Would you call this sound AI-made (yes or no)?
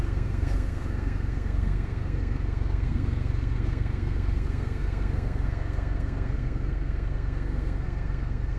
yes